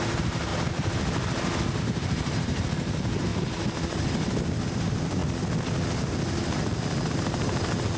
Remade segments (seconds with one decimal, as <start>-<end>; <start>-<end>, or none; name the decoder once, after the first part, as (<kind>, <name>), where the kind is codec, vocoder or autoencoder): 0.0-0.5 (vocoder, BigVGAN v2); 1.8-3.3; 4.7-5.2; 7.1-8.0